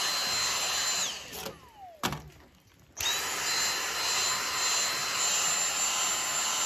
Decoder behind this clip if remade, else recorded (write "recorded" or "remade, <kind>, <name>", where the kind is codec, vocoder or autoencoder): recorded